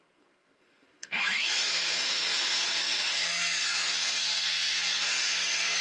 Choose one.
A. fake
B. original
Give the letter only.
A